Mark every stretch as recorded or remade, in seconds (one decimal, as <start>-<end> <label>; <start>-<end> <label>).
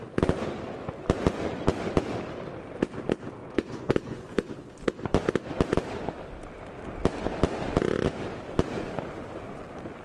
0.0-3.4 recorded; 3.4-4.5 remade; 4.5-10.0 recorded